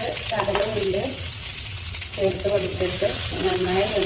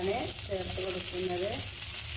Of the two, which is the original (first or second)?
second